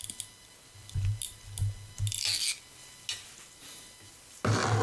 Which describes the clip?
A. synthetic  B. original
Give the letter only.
B